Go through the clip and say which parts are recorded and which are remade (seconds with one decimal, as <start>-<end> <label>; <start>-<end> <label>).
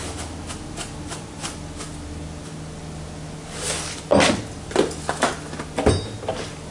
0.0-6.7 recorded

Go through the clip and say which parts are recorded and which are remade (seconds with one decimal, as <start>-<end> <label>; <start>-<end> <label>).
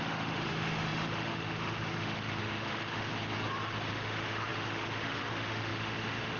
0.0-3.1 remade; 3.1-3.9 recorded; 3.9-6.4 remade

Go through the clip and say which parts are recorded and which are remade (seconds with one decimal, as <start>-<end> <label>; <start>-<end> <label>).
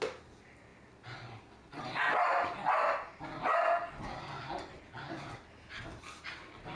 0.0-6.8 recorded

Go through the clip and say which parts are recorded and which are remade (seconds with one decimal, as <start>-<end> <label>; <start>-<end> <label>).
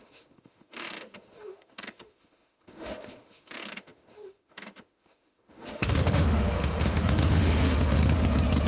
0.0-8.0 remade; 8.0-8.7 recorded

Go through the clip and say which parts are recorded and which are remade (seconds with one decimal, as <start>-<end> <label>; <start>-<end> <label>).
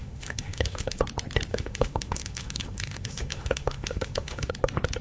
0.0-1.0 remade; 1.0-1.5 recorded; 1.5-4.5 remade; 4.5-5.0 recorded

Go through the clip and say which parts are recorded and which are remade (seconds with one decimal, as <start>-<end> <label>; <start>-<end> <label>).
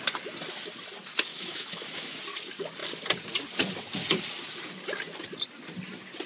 0.0-1.3 recorded; 1.3-2.2 remade; 2.2-6.3 recorded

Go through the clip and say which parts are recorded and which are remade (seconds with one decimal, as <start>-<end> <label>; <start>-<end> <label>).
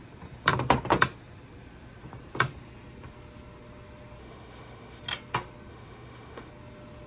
0.0-4.2 recorded; 4.2-5.0 remade; 5.0-5.7 recorded; 5.7-6.5 remade; 6.5-7.1 recorded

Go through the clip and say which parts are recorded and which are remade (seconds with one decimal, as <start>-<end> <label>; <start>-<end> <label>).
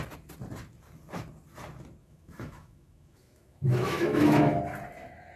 0.0-2.0 recorded; 2.0-4.6 remade; 4.6-5.4 recorded